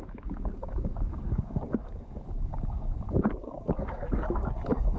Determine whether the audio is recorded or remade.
remade